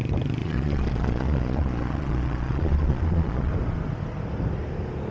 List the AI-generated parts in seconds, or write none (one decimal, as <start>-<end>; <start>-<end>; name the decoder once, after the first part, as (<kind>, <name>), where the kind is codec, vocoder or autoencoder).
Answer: 0.4-3.5 (vocoder, Vocos)